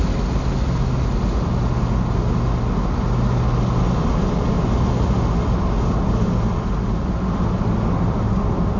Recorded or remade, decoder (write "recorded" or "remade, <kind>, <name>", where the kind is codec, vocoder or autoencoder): recorded